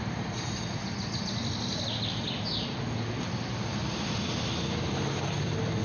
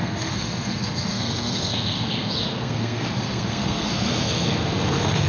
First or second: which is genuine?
first